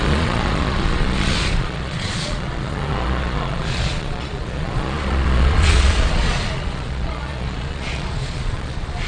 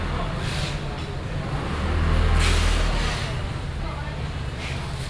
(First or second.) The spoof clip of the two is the first